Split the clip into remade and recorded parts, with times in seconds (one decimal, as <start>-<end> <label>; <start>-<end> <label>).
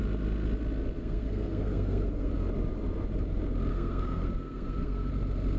0.0-1.0 recorded; 1.0-2.3 remade; 2.3-3.7 recorded; 3.7-5.1 remade; 5.1-5.6 recorded